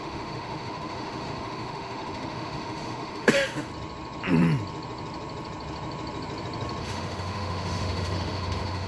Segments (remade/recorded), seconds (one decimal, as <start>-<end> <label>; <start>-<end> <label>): 0.0-3.7 remade; 3.7-6.8 recorded; 6.8-8.9 remade